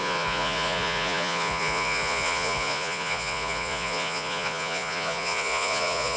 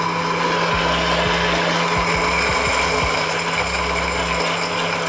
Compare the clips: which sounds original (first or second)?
second